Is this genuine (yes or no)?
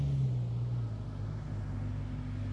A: yes